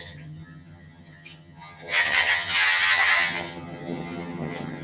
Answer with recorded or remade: remade